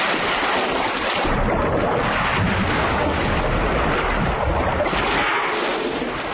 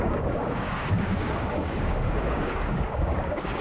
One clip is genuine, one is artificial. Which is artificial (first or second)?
second